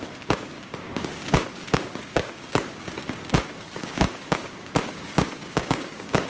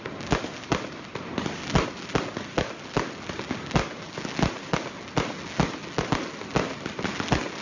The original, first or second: second